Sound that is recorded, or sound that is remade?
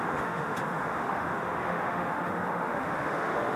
remade